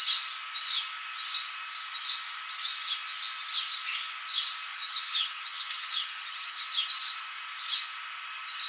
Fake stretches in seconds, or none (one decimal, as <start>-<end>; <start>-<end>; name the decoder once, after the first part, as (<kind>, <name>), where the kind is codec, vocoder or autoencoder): 4.7-6.6 (vocoder, HiFi-GAN)